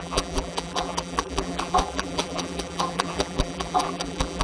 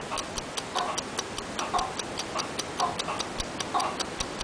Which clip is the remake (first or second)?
first